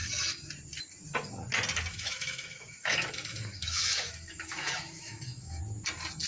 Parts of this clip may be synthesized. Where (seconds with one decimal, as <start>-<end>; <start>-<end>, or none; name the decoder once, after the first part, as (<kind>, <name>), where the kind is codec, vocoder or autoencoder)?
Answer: 1.9-5.6 (autoencoder, DAC-VAE)